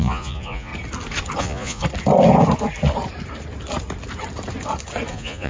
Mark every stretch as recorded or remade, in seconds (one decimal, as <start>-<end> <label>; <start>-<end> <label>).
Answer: 0.0-0.7 remade; 0.7-1.4 recorded; 1.4-1.8 remade; 1.8-5.1 recorded; 5.1-5.5 remade